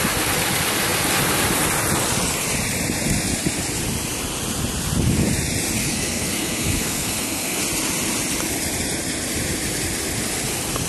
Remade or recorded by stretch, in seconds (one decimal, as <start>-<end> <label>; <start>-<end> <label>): 0.0-5.8 recorded; 5.8-7.6 remade; 7.6-10.9 recorded